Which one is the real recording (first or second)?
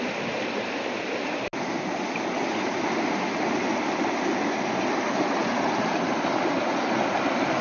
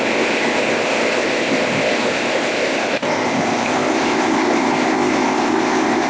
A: first